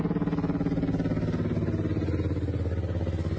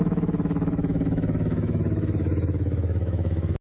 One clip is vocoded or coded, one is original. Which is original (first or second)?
first